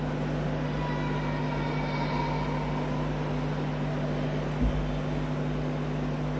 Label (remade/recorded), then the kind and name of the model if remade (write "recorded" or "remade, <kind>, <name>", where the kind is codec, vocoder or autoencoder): recorded